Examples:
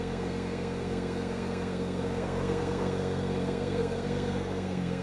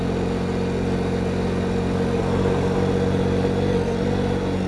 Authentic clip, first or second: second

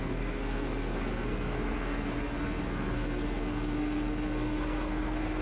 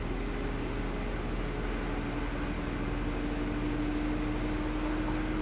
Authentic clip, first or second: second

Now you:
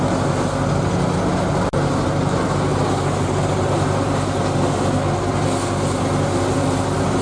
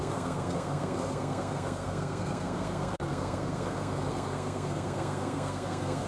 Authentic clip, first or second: first